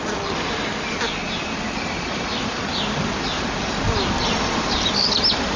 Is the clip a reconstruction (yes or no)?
no